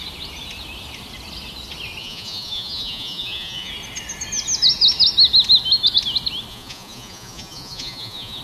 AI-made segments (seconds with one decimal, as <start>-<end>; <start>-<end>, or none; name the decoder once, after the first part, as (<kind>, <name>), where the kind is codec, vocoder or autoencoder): 2.0-3.7 (vocoder, Vocos); 6.5-8.4